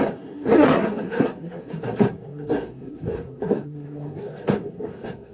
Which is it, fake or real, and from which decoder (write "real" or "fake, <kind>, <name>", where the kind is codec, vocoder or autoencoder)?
fake, codec, SNAC